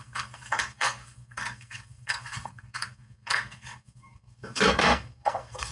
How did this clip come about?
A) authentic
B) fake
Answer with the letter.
B